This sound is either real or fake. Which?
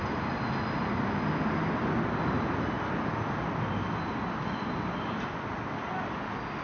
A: real